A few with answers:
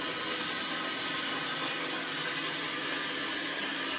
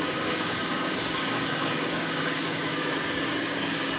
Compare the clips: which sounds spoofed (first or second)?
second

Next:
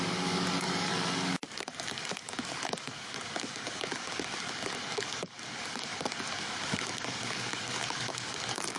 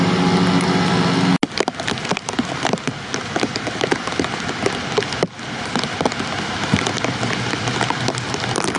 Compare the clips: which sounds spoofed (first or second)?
first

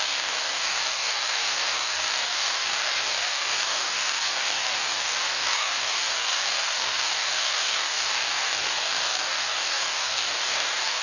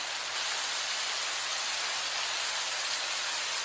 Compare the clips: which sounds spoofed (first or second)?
first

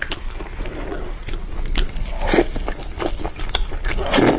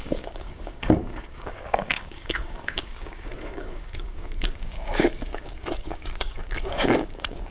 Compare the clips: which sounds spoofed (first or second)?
second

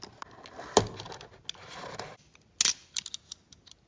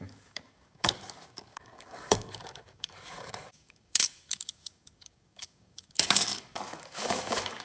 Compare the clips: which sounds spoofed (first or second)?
second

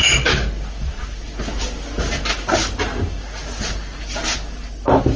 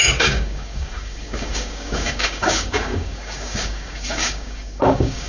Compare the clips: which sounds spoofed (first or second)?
second